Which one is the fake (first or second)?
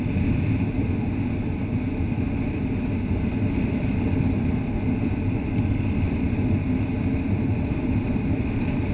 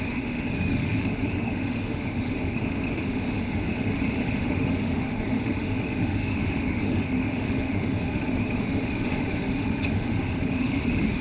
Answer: second